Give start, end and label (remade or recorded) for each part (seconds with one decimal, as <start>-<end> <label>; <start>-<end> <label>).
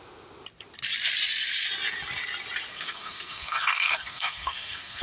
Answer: 0.0-2.7 recorded; 2.7-5.0 remade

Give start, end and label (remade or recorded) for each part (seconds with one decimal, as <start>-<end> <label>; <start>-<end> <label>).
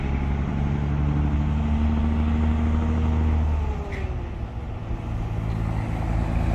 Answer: 0.0-6.5 recorded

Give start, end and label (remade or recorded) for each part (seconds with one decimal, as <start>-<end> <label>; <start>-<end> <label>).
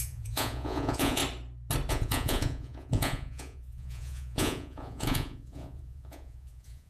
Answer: 0.0-1.2 remade; 1.2-1.9 recorded; 1.9-6.9 remade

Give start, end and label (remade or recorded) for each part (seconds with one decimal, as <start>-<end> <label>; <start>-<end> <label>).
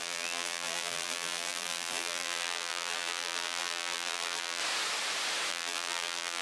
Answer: 0.0-4.6 remade; 4.6-5.5 recorded; 5.5-6.4 remade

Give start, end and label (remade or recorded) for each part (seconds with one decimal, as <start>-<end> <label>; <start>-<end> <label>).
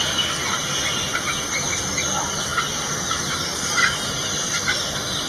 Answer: 0.0-0.7 remade; 0.7-1.8 recorded; 1.8-5.3 remade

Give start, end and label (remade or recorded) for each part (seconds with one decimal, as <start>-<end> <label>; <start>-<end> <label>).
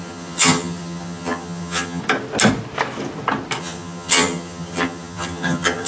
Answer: 0.0-2.0 remade; 2.0-3.6 recorded; 3.6-5.9 remade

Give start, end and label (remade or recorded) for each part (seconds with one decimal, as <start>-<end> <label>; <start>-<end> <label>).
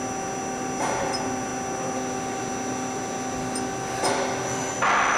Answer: 0.0-5.2 recorded